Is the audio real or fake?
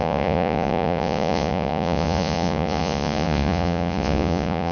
fake